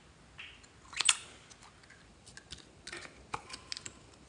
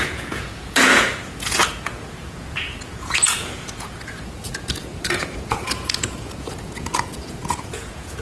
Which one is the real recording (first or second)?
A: first